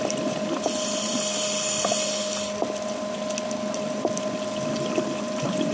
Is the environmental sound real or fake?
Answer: real